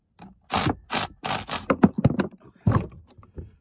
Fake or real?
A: real